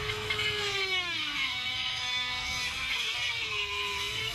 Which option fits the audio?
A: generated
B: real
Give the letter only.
A